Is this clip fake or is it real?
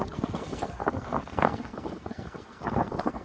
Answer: fake